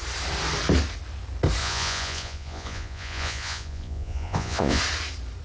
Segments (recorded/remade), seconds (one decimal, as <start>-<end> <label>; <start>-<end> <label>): 0.0-1.6 recorded; 1.6-4.8 remade; 4.8-5.4 recorded